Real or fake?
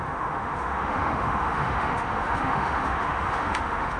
fake